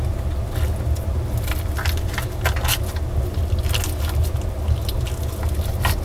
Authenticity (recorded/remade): recorded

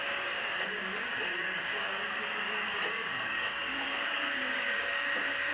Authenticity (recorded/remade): remade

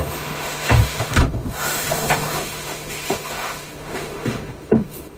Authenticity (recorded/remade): remade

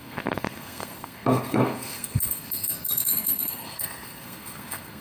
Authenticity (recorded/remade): remade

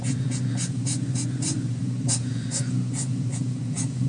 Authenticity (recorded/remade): remade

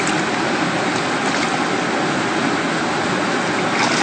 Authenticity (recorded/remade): recorded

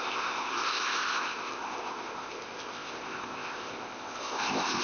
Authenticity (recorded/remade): remade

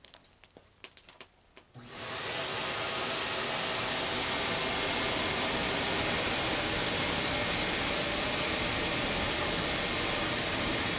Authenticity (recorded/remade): recorded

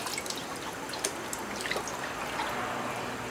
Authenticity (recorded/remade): recorded